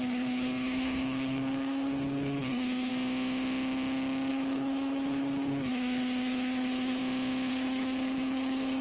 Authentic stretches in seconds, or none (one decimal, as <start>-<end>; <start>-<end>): 2.9-4.3; 7.0-7.5